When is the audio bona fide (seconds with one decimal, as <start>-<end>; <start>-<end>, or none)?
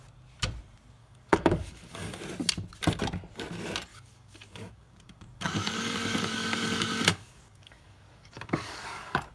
0.0-1.0; 2.2-3.9